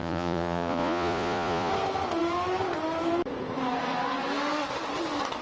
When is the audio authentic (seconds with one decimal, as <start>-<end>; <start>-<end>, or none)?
1.7-5.4